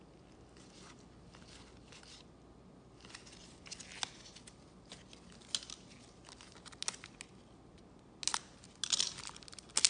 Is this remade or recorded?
recorded